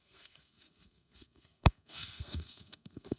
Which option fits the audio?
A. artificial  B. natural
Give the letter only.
A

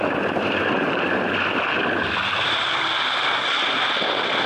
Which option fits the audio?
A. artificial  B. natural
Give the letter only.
B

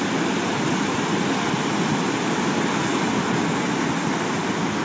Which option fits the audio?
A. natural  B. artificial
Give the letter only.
A